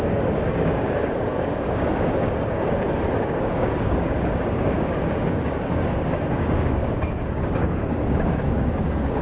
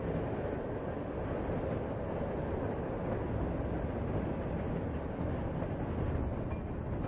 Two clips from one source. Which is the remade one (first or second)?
first